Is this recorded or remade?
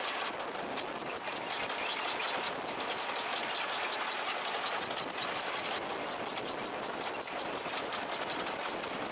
recorded